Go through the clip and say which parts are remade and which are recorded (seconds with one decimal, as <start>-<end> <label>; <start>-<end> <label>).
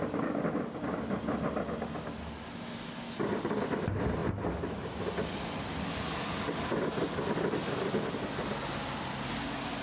0.0-9.8 recorded